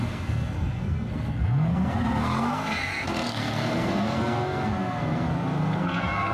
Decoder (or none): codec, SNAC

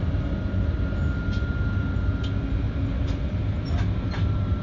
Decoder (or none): none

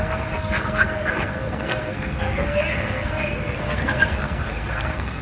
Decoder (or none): codec, SNAC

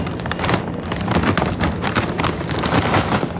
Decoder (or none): none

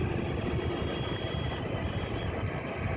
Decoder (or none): none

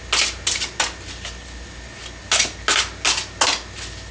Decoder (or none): none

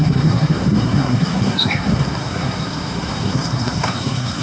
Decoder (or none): codec, SNAC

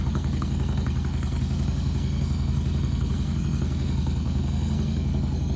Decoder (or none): codec, SNAC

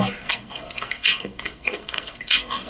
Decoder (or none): codec, SNAC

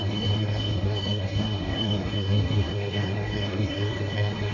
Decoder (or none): codec, SNAC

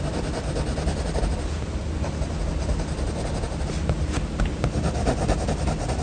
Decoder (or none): none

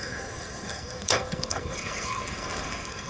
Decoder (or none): codec, SNAC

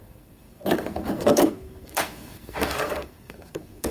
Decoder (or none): codec, SNAC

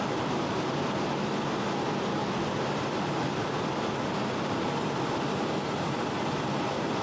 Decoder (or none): none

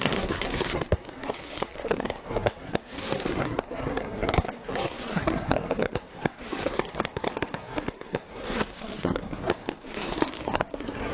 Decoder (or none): codec, SNAC